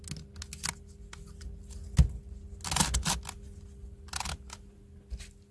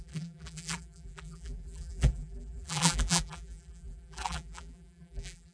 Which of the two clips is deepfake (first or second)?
second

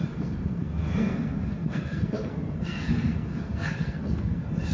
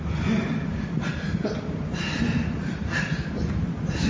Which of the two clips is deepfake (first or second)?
first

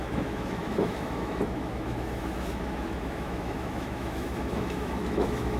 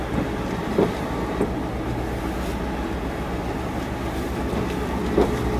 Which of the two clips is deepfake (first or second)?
first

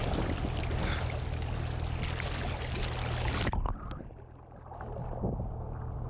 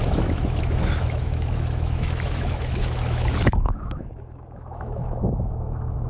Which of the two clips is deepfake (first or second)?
second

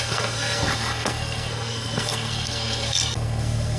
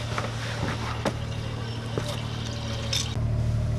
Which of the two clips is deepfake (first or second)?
first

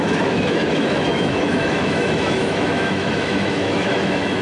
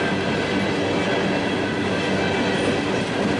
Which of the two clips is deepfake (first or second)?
first